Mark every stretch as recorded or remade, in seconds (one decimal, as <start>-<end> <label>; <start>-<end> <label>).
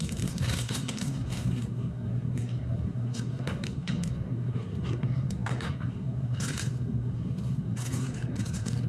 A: 0.0-8.9 remade